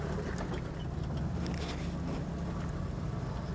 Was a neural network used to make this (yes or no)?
no